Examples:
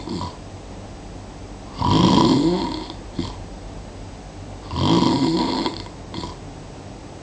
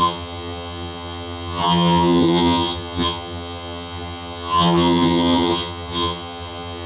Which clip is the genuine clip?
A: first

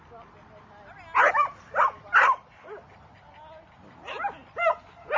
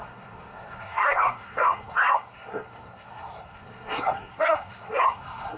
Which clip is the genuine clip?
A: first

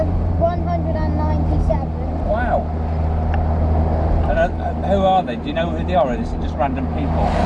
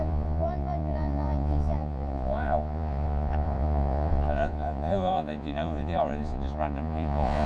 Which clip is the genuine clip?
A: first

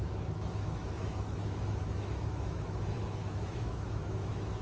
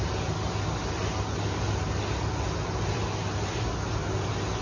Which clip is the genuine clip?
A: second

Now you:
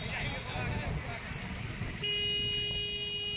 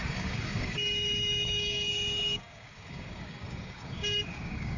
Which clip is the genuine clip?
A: first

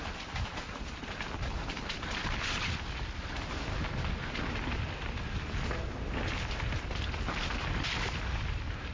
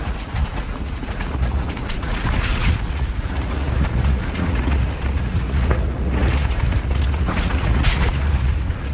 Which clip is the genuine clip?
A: first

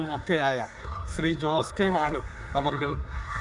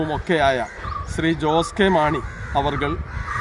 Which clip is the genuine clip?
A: second